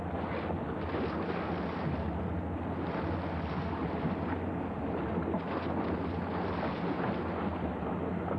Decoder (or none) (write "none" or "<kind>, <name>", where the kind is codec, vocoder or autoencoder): none